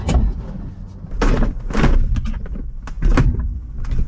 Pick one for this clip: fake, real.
real